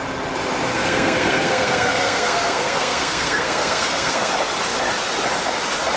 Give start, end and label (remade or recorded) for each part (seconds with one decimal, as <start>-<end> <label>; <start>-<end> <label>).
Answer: 0.0-0.7 recorded; 0.7-4.3 remade; 4.3-6.0 recorded